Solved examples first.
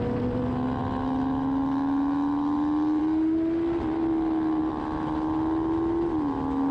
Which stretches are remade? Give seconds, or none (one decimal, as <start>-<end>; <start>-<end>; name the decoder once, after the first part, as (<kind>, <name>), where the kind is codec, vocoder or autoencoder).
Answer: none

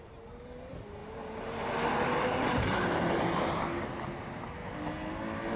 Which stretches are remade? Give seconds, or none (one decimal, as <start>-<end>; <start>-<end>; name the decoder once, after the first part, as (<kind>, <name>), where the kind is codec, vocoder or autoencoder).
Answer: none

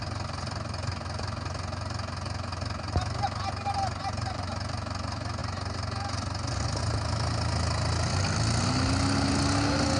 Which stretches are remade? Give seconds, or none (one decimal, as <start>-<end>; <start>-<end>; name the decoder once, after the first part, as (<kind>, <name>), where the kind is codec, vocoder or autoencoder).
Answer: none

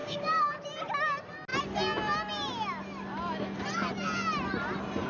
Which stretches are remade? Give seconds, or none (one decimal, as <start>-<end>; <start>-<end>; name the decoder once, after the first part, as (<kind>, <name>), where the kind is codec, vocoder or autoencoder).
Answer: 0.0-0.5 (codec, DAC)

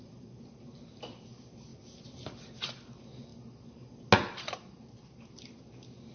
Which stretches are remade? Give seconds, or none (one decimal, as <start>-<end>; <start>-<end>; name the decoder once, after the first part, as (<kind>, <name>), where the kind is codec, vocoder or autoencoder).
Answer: none

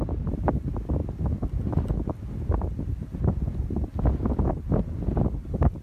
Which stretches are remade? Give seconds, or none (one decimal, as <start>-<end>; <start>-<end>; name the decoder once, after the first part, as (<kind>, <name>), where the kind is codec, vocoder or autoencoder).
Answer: none

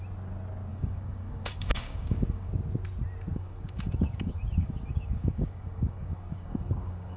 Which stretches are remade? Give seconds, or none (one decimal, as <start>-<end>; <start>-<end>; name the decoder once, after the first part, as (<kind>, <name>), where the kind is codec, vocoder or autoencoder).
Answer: 0.7-2.5 (codec, DAC); 3.3-7.2